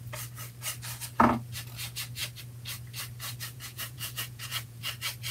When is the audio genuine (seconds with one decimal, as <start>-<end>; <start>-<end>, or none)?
0.0-3.5; 4.8-5.3